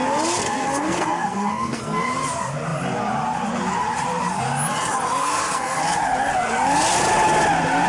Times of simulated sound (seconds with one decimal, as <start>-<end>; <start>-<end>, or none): 0.4-2.0; 5.2-5.8